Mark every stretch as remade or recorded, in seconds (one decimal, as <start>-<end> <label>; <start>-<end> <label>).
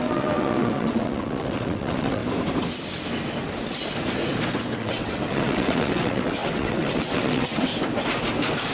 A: 0.0-2.2 remade; 2.2-4.7 recorded; 4.7-7.7 remade; 7.7-8.7 recorded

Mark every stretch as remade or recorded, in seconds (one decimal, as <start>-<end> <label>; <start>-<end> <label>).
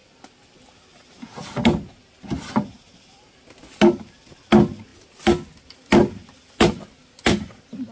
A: 0.0-7.9 recorded